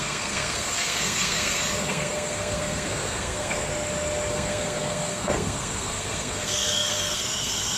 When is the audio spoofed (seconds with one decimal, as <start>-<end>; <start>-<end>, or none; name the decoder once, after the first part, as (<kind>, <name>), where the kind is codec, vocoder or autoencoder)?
0.0-3.7 (codec, SNAC); 4.3-7.8